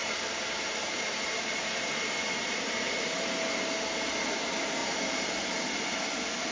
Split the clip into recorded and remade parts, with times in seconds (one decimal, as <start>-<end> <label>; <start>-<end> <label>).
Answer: 0.0-3.3 remade; 3.3-4.8 recorded; 4.8-5.7 remade; 5.7-6.5 recorded